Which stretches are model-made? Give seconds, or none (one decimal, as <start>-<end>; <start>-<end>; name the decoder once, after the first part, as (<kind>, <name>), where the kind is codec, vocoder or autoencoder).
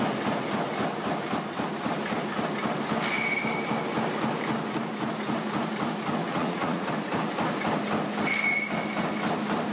6.2-6.9 (vocoder, Vocos)